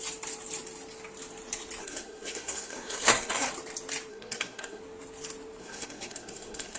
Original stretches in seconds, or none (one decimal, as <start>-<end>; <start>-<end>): 0.0-1.8; 3.5-4.1; 4.8-5.6